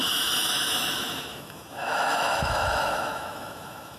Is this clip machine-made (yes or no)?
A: yes